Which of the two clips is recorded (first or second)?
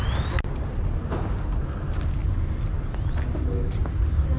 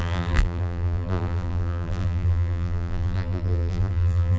first